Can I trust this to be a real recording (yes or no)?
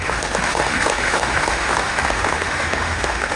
no